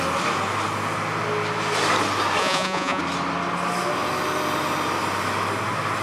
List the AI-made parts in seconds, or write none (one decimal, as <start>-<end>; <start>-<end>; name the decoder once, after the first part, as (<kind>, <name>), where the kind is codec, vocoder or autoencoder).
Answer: 2.4-3.0 (vocoder, Vocos)